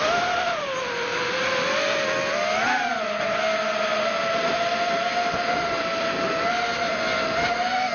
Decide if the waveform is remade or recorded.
recorded